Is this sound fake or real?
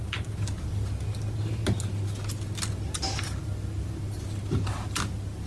real